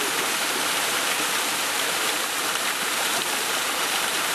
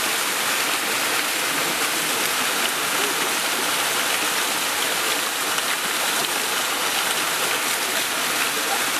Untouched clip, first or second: second